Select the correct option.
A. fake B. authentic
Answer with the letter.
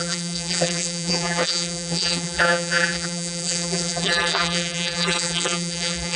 A